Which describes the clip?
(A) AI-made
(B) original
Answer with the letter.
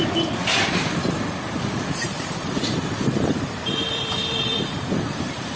A